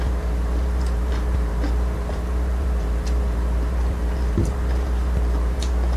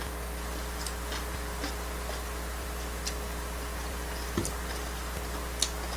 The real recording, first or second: second